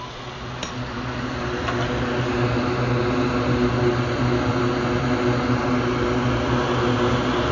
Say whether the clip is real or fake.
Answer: real